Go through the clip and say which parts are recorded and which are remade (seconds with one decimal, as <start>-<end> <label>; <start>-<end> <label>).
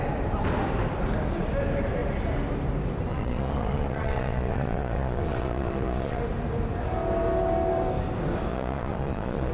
0.0-3.1 recorded; 3.1-6.2 remade; 6.2-8.5 recorded; 8.5-9.5 remade